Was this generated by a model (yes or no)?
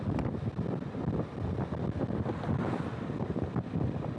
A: no